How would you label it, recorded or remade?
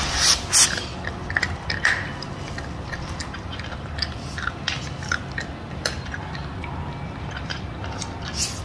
recorded